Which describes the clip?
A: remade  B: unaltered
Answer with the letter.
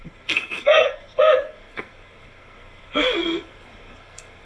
A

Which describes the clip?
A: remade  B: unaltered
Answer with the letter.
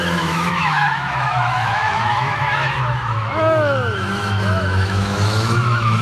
A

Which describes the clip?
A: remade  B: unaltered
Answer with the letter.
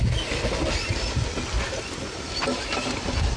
B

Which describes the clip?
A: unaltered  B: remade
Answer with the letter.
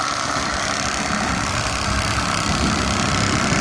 A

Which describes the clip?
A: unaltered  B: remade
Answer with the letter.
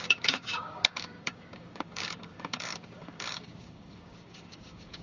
B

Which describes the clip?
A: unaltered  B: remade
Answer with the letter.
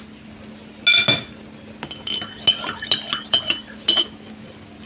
A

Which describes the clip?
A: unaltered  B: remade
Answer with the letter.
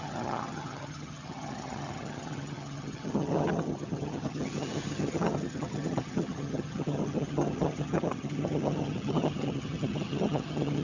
B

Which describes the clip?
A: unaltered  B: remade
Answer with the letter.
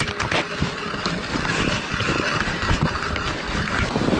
A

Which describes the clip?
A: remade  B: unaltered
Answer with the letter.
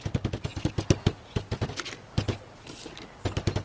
B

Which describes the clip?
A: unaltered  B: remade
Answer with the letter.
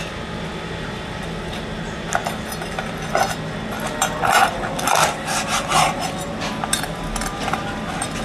A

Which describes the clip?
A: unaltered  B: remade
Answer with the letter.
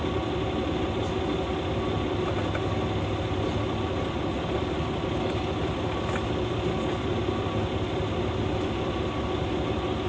A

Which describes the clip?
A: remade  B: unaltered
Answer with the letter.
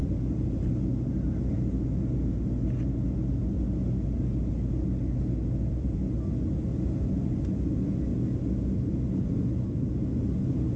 B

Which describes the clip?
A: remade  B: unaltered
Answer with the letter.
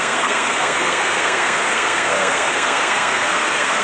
A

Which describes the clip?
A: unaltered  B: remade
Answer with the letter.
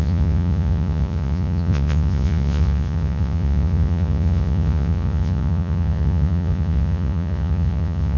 B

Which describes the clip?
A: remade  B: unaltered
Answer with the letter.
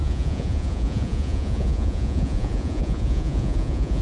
A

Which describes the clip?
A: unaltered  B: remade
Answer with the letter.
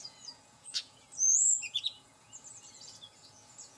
B